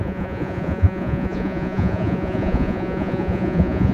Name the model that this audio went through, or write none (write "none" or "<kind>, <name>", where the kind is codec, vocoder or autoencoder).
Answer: vocoder, Vocos